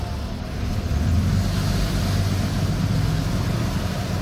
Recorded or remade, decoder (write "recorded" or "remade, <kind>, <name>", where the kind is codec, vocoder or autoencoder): recorded